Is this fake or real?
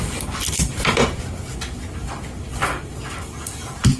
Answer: real